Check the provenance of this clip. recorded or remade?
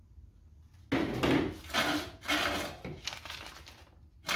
recorded